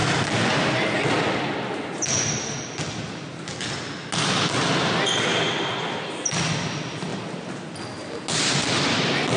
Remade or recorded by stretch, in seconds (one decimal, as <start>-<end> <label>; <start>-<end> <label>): 0.0-9.4 recorded